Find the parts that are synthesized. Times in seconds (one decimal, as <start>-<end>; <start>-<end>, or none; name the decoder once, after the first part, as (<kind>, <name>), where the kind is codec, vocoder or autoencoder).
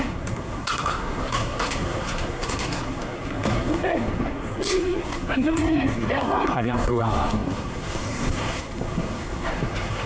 0.0-10.1 (codec, SNAC)